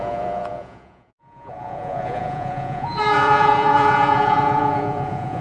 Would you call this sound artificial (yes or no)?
yes